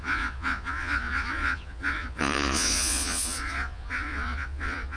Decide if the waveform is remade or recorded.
remade